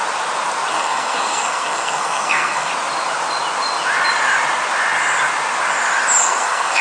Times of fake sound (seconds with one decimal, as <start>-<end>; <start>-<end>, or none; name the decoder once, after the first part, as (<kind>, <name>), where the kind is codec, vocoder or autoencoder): 0.7-2.7 (codec, SNAC); 6.2-6.8